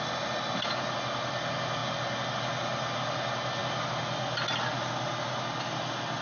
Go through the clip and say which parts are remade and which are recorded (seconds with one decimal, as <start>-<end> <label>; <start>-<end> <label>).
0.0-6.2 recorded